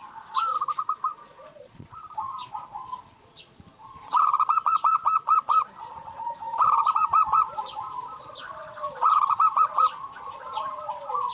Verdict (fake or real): fake